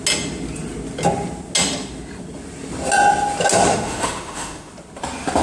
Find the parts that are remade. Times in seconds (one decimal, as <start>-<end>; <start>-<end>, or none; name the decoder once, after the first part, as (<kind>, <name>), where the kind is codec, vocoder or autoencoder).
3.7-4.7 (autoencoder, DAC-VAE)